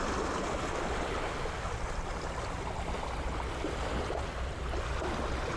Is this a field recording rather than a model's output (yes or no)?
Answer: yes